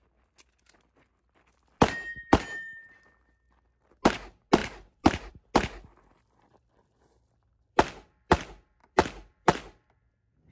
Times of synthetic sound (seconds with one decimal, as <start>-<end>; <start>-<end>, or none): 4.6-5.3; 6.6-8.3; 8.8-10.5